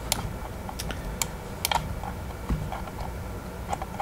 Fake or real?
real